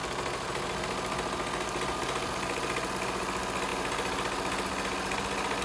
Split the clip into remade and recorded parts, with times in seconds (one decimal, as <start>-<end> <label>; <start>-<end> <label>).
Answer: 0.0-5.6 recorded